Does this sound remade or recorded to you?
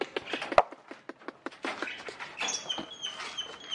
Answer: recorded